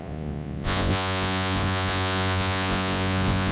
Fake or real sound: fake